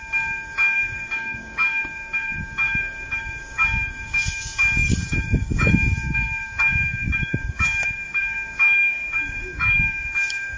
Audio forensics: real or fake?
fake